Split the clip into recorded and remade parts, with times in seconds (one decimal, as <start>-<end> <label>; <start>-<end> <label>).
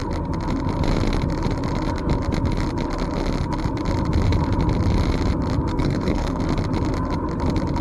0.0-5.7 recorded; 5.7-6.4 remade; 6.4-7.8 recorded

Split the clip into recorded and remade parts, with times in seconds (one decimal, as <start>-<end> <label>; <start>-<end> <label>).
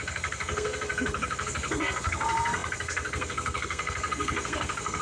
0.0-5.0 remade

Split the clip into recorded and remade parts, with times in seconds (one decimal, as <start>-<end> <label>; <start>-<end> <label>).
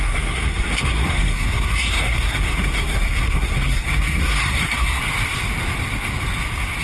0.0-5.0 remade; 5.0-6.8 recorded